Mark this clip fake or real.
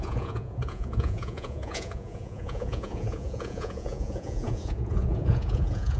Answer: fake